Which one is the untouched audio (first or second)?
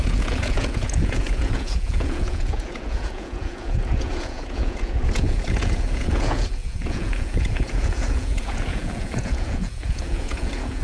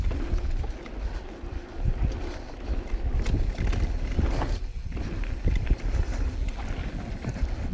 second